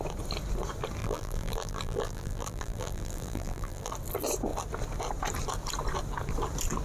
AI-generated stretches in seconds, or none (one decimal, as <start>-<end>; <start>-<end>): 1.0-3.9